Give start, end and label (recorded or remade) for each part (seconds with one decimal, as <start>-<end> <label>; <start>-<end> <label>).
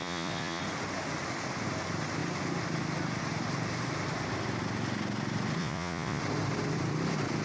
0.0-0.6 remade; 0.6-5.6 recorded; 5.6-6.2 remade; 6.2-7.4 recorded